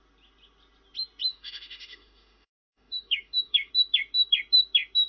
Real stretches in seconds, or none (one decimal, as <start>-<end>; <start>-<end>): 0.0-1.3; 3.7-5.1